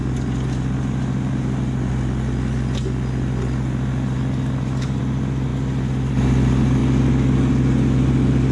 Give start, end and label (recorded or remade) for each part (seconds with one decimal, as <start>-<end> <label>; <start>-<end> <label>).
0.0-8.5 recorded